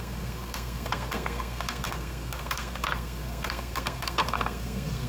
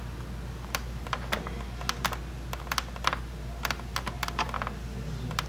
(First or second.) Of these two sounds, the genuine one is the second